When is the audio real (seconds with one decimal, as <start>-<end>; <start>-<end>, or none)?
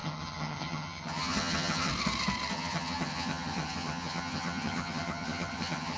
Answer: 1.9-2.5